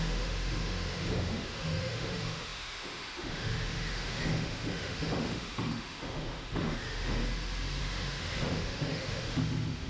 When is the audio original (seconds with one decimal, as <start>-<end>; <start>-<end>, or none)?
7.2-7.8